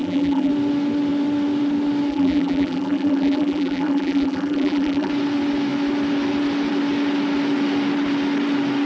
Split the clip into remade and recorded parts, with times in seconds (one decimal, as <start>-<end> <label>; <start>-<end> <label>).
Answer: 0.0-0.5 remade; 0.5-2.1 recorded; 2.1-5.1 remade; 5.1-8.9 recorded